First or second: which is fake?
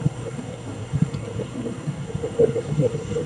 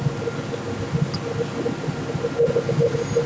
first